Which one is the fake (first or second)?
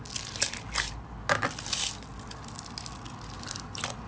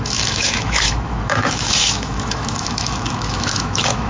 second